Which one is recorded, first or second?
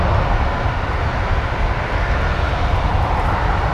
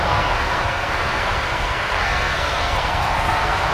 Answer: first